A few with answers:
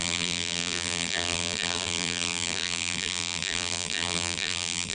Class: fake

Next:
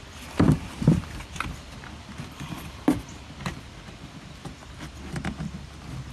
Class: real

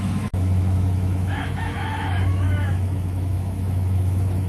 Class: fake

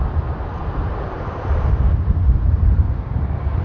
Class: fake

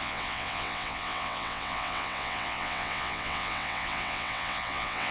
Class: fake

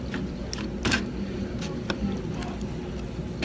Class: real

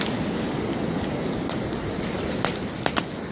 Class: real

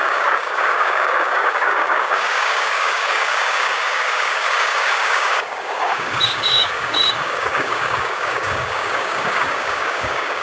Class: fake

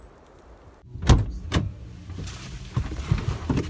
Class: real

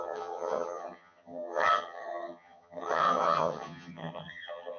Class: fake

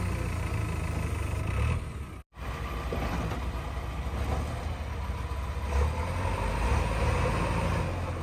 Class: real